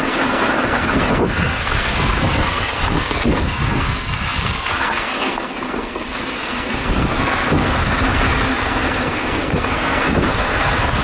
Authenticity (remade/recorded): remade